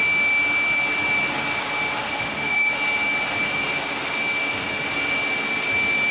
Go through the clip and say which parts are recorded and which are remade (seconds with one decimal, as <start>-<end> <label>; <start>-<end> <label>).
0.0-2.0 recorded; 2.0-2.7 remade; 2.7-6.1 recorded

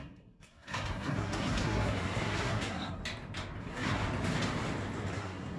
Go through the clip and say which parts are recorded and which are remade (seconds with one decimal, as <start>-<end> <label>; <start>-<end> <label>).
0.0-3.0 remade; 3.0-3.6 recorded; 3.6-4.0 remade; 4.0-5.1 recorded; 5.1-5.6 remade